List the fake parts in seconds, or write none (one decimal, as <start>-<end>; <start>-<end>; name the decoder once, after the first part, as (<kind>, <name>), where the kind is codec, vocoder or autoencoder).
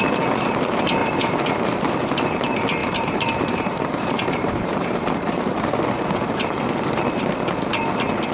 1.0-1.9 (vocoder, BigVGAN v2); 2.8-5.9